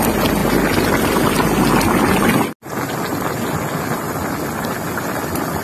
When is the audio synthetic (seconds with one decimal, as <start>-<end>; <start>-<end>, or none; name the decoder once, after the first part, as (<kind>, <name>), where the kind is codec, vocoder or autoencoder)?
none

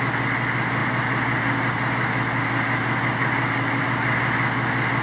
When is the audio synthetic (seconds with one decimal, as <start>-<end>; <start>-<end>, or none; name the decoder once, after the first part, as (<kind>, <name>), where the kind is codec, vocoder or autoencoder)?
none